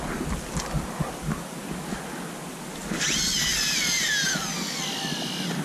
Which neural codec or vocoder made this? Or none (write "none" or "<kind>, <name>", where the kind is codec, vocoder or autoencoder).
none